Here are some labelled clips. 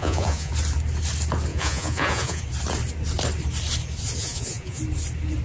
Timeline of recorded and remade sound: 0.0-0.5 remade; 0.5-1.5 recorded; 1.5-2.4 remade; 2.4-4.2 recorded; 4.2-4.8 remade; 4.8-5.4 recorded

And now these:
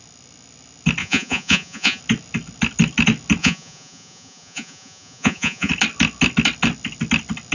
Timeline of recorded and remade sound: 0.0-1.0 recorded; 1.0-2.0 remade; 2.0-3.4 recorded; 3.4-5.7 remade; 5.7-7.5 recorded